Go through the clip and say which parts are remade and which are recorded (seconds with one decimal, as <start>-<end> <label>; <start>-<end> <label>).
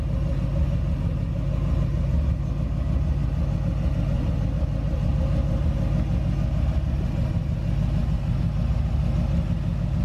0.0-10.0 recorded